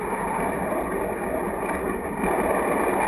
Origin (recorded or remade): recorded